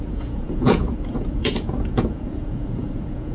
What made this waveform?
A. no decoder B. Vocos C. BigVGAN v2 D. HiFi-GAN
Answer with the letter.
B